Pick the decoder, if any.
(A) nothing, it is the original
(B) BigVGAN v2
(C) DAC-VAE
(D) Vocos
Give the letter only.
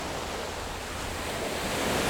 A